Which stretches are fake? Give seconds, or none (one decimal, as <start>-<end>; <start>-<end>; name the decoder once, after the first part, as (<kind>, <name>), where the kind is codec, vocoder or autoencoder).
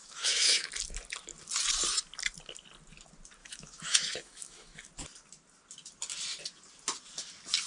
0.0-0.7 (autoencoder, DAC-VAE); 3.4-4.9